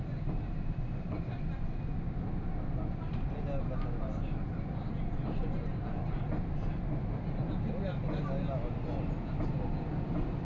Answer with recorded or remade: recorded